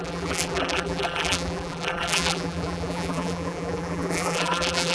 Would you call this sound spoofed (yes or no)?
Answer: yes